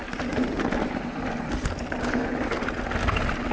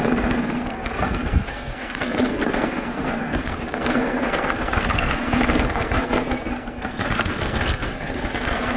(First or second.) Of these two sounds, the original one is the first